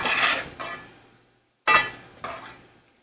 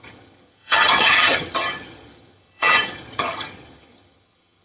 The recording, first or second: first